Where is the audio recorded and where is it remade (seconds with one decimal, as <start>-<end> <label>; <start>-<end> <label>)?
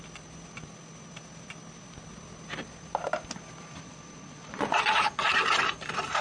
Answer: 0.0-3.8 recorded; 3.8-5.3 remade; 5.3-6.2 recorded